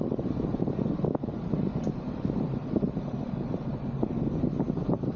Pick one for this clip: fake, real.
real